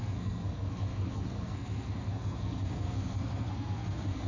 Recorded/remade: remade